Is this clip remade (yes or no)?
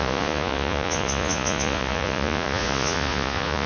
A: yes